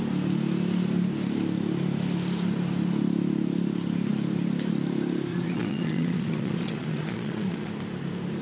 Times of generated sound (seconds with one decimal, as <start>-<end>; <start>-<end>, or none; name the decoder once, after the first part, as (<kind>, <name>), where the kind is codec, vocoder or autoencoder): 5.3-7.7 (vocoder, Vocos)

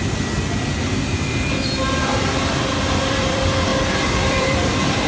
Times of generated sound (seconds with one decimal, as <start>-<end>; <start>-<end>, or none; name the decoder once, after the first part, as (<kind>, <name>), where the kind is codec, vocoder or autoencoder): 2.5-5.1 (vocoder, BigVGAN v2)

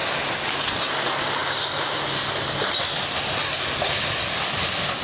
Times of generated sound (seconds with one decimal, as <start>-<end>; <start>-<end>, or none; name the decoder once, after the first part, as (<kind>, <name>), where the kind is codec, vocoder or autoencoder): none